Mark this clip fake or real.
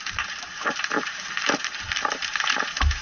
fake